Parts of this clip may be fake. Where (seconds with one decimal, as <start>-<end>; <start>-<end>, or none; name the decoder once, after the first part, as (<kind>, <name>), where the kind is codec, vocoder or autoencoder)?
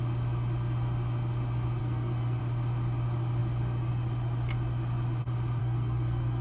1.8-2.4 (codec, SNAC); 5.6-6.4